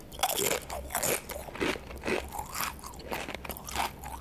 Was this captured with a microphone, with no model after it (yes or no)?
yes